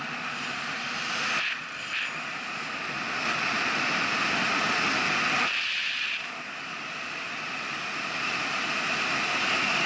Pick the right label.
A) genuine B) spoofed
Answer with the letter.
A